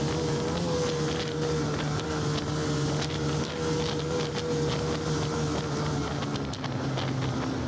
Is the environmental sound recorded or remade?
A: recorded